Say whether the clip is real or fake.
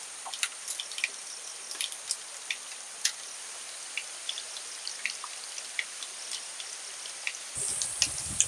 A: real